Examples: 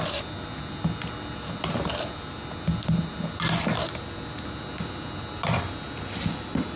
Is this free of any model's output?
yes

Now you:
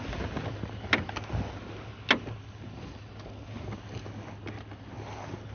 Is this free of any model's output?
yes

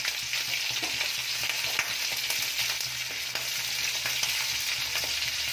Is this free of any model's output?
yes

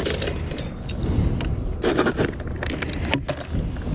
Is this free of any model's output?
yes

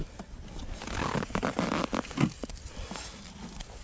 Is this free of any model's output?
yes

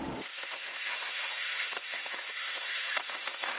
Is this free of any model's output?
no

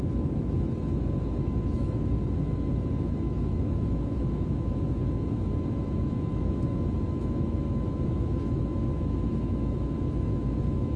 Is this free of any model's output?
no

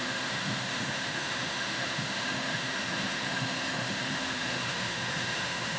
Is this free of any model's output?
no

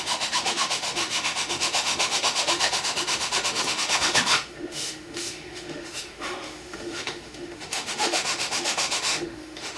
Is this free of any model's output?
no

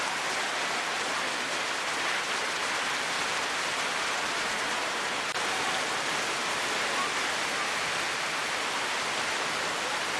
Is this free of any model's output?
yes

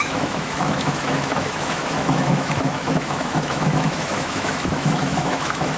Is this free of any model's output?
no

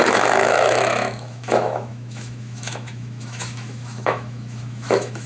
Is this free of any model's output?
no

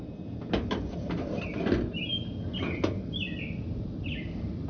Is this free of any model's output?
yes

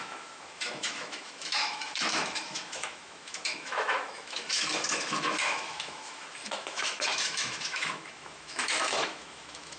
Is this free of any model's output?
no